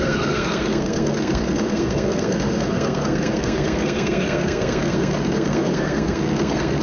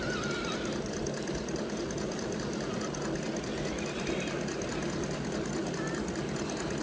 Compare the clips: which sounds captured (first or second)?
second